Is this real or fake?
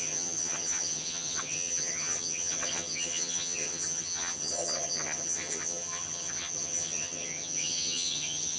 fake